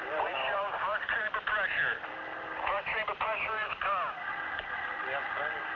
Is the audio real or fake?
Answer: real